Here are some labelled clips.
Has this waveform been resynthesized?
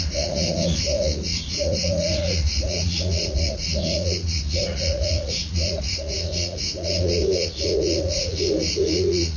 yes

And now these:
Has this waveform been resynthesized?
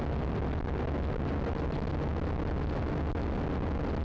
no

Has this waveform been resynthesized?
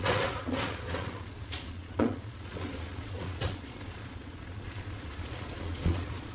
yes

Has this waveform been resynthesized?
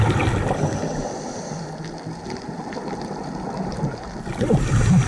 no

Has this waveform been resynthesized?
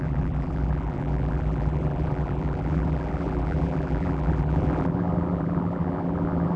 yes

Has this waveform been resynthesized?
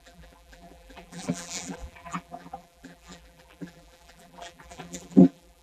yes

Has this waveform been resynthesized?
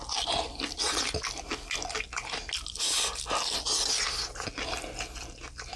no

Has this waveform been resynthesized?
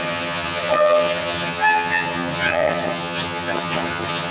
yes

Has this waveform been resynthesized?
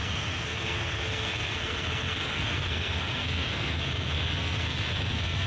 yes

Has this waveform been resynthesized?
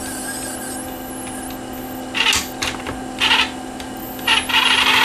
no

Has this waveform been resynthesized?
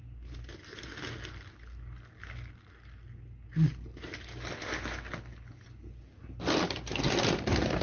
no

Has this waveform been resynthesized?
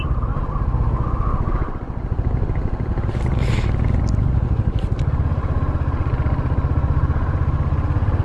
no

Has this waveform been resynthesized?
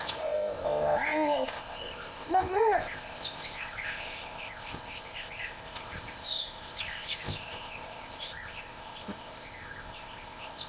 yes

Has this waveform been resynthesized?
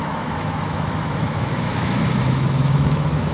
yes